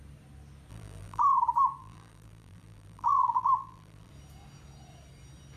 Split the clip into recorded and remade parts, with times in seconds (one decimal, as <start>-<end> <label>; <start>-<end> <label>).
0.0-0.7 recorded; 0.7-1.2 remade; 1.2-1.8 recorded; 1.8-4.1 remade; 4.1-5.6 recorded